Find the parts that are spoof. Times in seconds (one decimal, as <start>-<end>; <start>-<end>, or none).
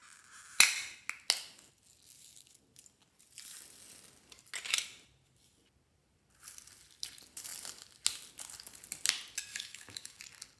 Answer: 9.5-10.2